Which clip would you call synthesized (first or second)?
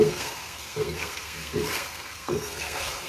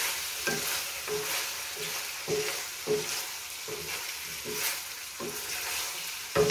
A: first